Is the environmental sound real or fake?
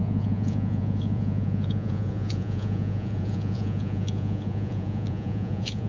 fake